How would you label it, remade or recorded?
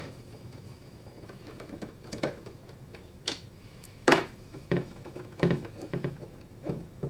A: remade